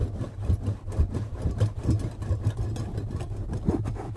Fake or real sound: real